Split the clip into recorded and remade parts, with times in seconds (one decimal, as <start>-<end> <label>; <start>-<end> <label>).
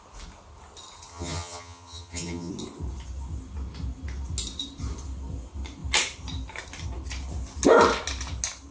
0.0-1.1 recorded; 1.1-2.5 remade; 2.5-8.7 recorded